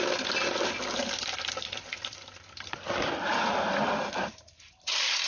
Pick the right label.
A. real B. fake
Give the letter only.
B